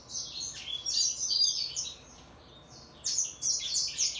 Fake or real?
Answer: real